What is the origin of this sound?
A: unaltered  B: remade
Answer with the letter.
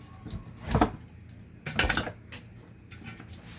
A